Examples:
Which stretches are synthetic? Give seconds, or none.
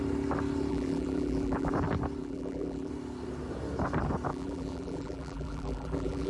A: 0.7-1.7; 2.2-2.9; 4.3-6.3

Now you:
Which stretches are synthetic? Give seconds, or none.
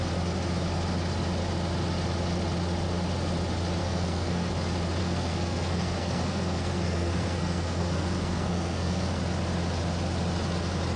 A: 3.8-4.5; 5.0-9.2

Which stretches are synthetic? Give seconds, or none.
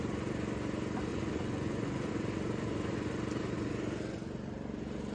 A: 1.1-2.1